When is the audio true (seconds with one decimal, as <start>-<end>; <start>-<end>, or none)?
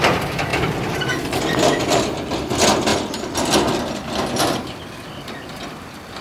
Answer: 0.0-6.2